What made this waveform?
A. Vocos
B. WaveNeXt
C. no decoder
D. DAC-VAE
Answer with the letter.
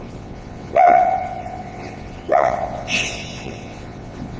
B